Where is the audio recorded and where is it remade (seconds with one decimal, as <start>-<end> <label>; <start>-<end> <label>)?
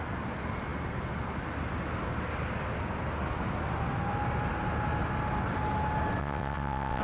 0.0-6.2 recorded; 6.2-7.0 remade